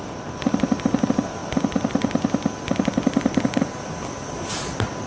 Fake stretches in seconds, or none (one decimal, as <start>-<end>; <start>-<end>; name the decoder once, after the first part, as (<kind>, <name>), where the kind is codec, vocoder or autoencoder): none